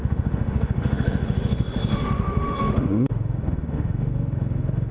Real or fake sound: fake